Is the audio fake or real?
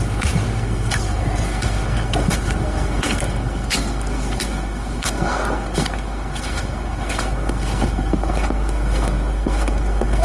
fake